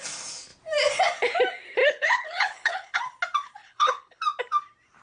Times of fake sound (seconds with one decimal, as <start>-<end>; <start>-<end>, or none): 1.8-3.0; 3.6-4.2